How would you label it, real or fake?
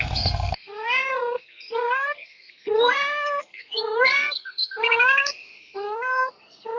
fake